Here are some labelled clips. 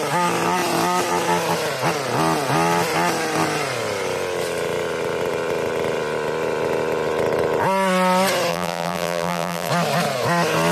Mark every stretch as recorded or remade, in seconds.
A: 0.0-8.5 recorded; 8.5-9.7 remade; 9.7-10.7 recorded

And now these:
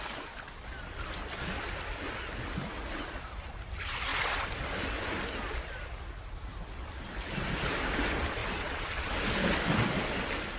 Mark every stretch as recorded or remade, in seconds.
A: 0.0-8.4 recorded; 8.4-9.3 remade; 9.3-10.6 recorded